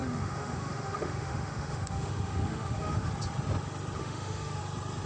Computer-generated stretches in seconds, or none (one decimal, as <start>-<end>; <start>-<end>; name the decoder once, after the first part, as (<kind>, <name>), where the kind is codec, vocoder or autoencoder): 0.0-3.1 (autoencoder, DAC-VAE); 4.0-4.6